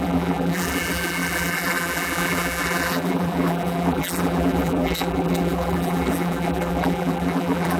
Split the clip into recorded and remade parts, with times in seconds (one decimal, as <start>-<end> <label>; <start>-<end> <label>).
0.0-7.8 remade